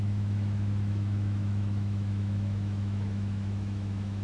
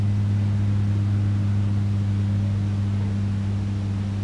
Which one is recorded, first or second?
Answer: second